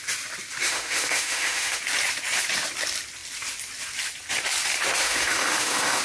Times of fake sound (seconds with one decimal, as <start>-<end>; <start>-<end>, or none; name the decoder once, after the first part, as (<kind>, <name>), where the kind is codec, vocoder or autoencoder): 0.6-1.8 (autoencoder, DAC-VAE); 5.0-6.0